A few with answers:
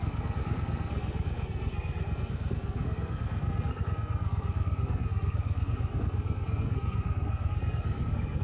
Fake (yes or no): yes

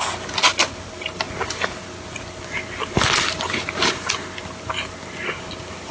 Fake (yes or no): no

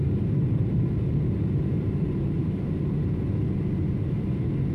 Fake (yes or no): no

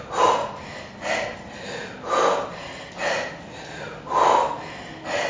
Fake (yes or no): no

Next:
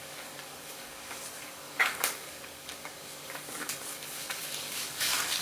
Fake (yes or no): yes